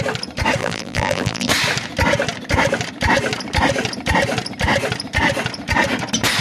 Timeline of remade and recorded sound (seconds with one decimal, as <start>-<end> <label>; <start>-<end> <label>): 0.0-0.6 recorded; 0.6-1.5 remade; 1.5-6.4 recorded